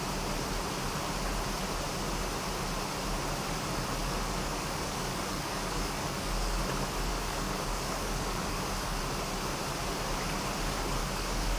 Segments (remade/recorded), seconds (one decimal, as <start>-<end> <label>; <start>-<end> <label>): 0.0-4.0 recorded; 4.0-6.6 remade; 6.6-7.1 recorded; 7.1-9.0 remade; 9.0-11.0 recorded; 11.0-11.6 remade